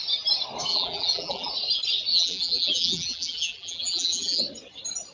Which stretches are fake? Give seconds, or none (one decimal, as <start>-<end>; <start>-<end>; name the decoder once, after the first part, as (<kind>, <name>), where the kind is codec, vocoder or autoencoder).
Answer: 0.7-1.5 (vocoder, BigVGAN v2); 2.1-4.4